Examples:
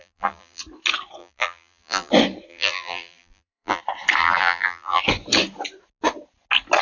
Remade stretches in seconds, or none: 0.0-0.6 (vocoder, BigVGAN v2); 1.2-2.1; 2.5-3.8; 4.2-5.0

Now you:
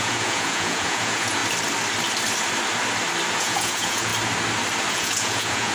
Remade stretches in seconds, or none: 0.0-1.4 (vocoder, Vocos); 3.3-4.1; 4.9-5.7

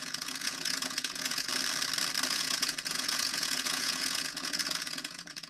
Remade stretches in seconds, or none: 0.0-1.5 (vocoder, Vocos); 2.3-5.5

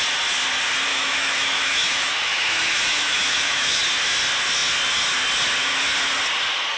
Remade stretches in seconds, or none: 0.9-3.8 (autoencoder, DAC-VAE)

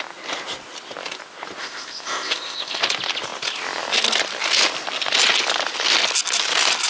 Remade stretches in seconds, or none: 1.6-2.8 (codec, ZipCodec)

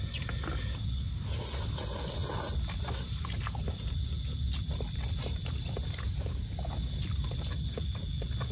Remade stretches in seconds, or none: none